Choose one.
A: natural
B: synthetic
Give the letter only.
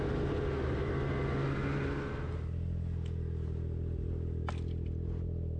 A